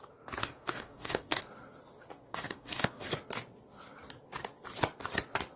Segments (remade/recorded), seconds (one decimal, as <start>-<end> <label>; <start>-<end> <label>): 0.0-0.4 recorded; 0.4-1.4 remade; 1.4-2.3 recorded; 2.3-3.1 remade; 3.1-5.6 recorded